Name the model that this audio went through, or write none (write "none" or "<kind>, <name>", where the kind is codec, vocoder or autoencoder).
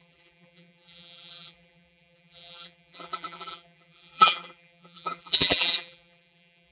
vocoder, BigVGAN v2